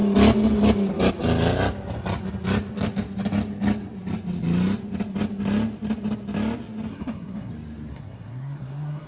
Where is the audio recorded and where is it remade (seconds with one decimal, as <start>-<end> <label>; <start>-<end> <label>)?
0.0-6.9 recorded; 6.9-7.5 remade; 7.5-7.9 recorded; 7.9-9.1 remade